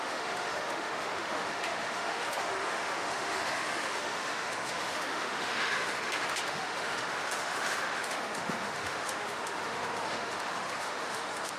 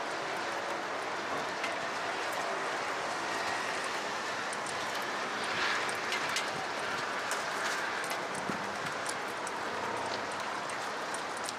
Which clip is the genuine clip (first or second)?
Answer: second